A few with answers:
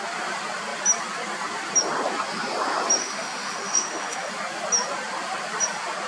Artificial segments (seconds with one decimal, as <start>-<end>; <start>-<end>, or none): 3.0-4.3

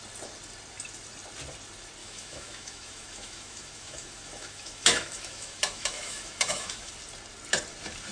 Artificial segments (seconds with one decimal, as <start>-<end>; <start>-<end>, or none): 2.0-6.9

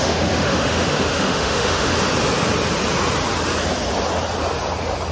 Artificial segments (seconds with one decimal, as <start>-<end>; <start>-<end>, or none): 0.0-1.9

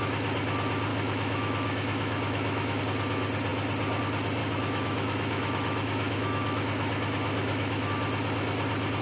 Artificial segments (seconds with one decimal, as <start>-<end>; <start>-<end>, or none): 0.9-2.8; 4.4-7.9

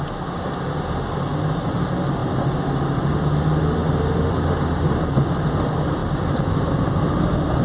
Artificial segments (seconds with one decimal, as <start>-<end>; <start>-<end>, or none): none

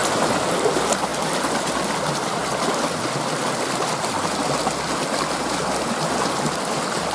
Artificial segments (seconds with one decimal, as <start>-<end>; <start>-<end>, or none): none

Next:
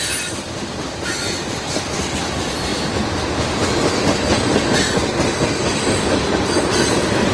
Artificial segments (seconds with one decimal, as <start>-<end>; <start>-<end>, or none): none

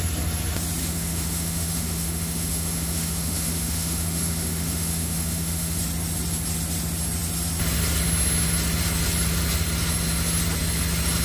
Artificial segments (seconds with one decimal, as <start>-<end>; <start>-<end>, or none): 0.8-5.8